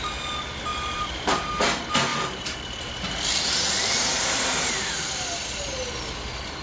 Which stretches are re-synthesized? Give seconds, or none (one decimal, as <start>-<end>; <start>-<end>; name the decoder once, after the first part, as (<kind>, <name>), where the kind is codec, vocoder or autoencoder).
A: 0.7-1.5 (vocoder, BigVGAN v2); 2.1-4.7